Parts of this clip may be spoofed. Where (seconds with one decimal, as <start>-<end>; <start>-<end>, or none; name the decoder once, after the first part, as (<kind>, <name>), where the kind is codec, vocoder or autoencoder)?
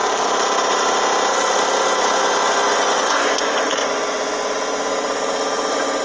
2.2-4.5 (vocoder, Vocos)